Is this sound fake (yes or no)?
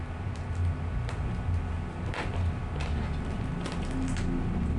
no